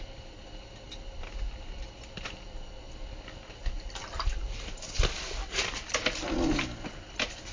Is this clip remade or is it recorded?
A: recorded